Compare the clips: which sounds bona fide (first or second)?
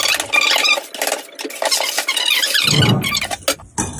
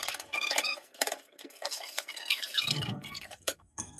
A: first